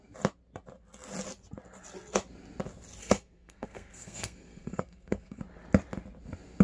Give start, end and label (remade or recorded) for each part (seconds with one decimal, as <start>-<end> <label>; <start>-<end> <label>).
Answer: 0.0-3.0 recorded; 3.0-5.4 remade; 5.4-6.6 recorded